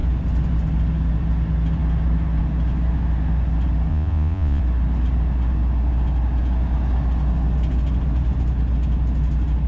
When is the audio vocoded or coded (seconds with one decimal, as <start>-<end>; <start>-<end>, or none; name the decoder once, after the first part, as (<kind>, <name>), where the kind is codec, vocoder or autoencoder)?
3.9-4.6 (vocoder, Vocos)

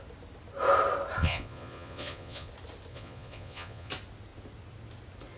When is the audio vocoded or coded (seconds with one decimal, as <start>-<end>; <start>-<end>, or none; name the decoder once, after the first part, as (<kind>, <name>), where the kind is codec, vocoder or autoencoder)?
1.2-2.5 (vocoder, Vocos); 2.9-3.9